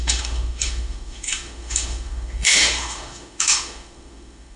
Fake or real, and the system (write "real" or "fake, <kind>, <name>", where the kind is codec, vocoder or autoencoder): fake, autoencoder, DAC-VAE